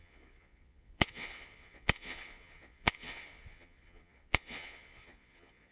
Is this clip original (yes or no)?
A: no